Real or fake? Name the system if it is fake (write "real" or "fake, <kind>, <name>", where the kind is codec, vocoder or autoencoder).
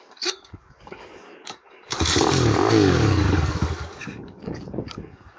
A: fake, codec, DAC